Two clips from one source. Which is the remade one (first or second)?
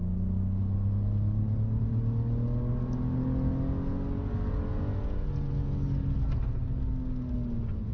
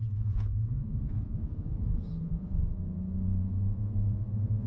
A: second